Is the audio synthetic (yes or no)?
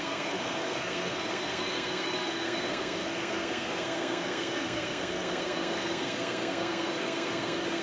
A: yes